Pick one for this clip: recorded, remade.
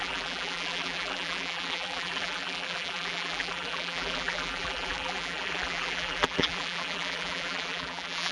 remade